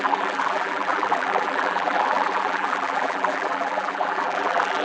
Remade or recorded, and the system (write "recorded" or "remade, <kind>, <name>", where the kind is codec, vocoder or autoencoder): remade, vocoder, BigVGAN v2